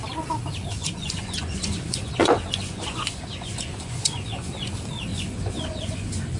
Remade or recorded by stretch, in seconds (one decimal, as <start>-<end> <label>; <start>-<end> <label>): 0.0-0.7 recorded; 0.7-4.5 remade; 4.5-5.1 recorded; 5.1-6.4 remade